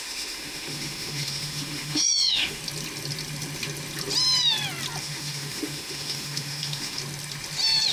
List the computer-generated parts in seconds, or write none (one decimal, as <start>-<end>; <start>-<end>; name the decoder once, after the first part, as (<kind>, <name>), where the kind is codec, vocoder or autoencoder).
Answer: 0.0-2.6 (autoencoder, DAC-VAE); 5.0-7.0